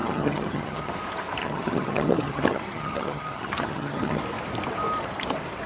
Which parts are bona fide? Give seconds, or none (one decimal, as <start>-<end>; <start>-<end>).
0.9-1.4; 4.2-5.7